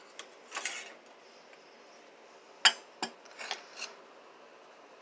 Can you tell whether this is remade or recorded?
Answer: recorded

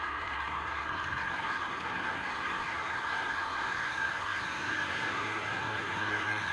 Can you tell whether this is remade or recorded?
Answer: remade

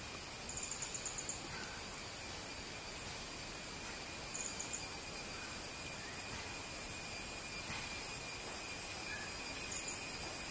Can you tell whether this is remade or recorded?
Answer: recorded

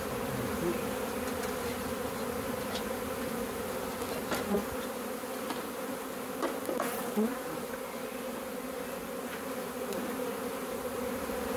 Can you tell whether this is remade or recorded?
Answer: recorded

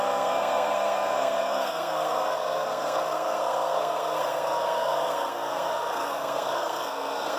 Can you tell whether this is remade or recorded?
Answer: remade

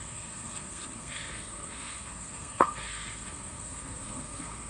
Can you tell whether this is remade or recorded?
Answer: remade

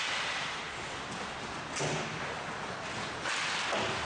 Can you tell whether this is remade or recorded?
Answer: recorded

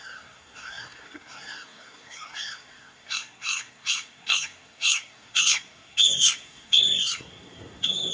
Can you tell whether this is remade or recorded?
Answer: remade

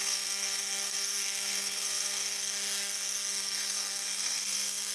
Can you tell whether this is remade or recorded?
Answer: remade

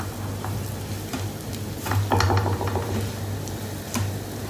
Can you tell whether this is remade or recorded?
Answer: recorded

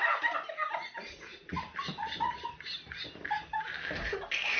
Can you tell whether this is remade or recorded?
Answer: recorded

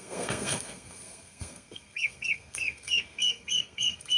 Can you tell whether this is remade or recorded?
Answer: remade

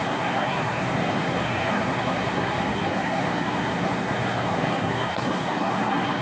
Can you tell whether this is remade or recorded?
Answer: remade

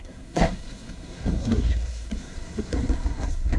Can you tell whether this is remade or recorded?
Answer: remade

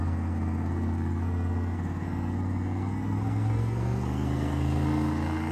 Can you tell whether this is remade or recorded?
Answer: remade